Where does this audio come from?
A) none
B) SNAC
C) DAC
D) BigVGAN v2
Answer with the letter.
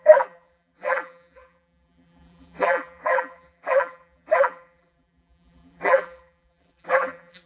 D